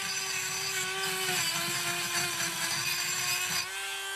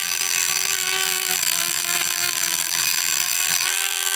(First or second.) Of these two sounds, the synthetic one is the second